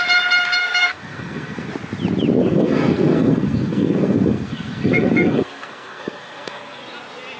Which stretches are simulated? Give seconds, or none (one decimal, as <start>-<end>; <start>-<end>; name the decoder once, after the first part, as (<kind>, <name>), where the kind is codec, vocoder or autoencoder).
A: 0.6-1.7 (codec, SNAC); 2.4-6.8

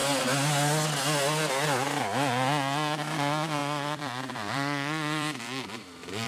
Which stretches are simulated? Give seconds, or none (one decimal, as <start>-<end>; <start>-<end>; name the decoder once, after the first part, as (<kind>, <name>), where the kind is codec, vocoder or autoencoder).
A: 3.6-6.3 (vocoder, BigVGAN v2)